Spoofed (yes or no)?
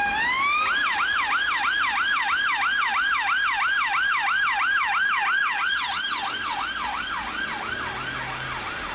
no